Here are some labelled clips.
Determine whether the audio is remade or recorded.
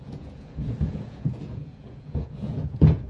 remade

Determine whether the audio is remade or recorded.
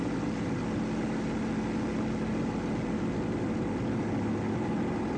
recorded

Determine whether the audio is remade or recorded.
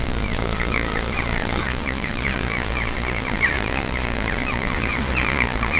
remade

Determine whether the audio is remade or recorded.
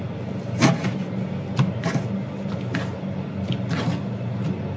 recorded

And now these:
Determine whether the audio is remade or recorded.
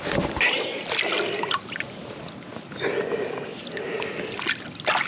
recorded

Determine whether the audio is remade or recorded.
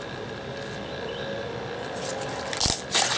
recorded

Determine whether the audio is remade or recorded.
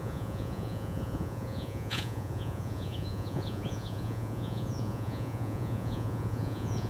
remade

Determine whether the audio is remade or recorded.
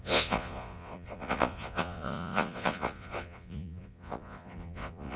remade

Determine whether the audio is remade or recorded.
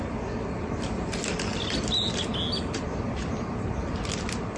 recorded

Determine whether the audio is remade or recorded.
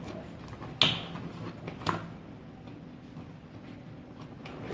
recorded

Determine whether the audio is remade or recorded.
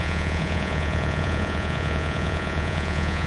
remade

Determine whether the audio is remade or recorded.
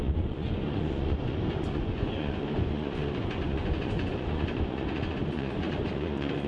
remade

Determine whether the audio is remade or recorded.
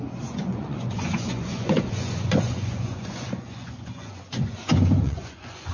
remade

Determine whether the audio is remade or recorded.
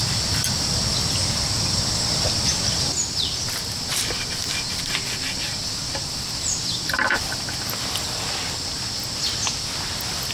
recorded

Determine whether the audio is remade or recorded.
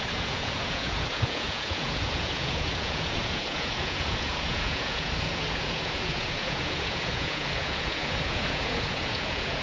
remade